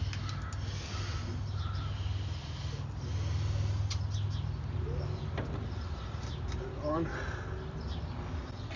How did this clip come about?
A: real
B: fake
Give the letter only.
A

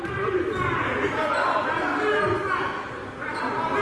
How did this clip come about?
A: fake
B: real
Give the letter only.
B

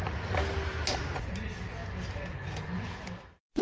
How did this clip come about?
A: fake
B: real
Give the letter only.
B